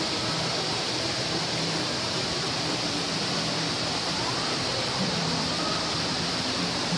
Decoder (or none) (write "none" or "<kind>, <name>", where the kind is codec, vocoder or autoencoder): vocoder, BigVGAN v2